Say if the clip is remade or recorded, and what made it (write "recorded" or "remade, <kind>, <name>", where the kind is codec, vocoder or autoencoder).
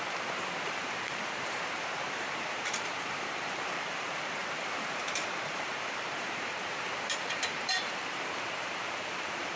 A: remade, vocoder, BigVGAN v2